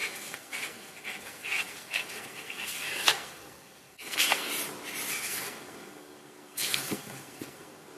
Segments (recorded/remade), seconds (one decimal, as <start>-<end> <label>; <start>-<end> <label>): 0.0-4.5 remade; 4.5-5.1 recorded; 5.1-8.0 remade